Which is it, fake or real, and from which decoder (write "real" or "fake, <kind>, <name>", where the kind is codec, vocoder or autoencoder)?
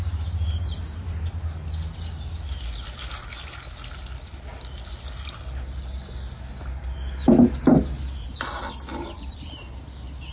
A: real